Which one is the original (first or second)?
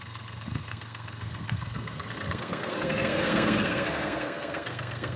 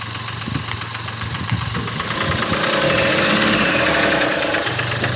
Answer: second